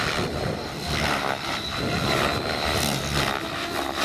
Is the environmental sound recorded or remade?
recorded